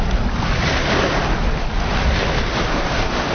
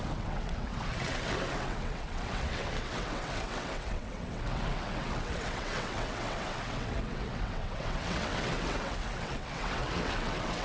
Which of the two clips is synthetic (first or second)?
second